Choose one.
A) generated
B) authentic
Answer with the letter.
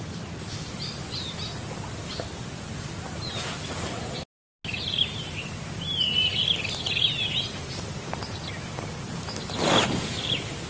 B